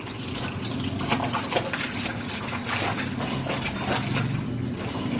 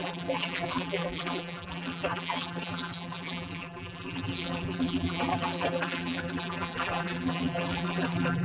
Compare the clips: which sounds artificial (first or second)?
second